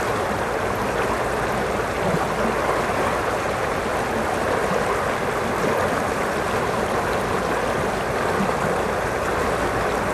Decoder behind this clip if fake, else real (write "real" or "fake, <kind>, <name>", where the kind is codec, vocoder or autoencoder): real